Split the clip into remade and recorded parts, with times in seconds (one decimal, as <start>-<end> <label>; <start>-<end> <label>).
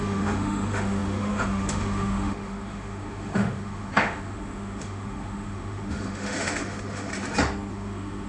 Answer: 0.0-7.1 remade; 7.1-7.7 recorded; 7.7-8.3 remade